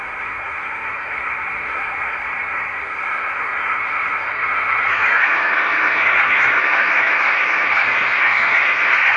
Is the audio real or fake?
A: fake